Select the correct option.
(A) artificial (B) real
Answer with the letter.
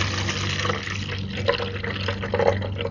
B